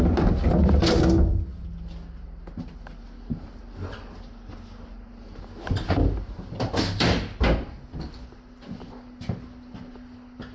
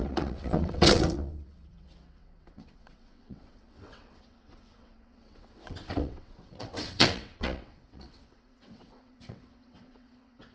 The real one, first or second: first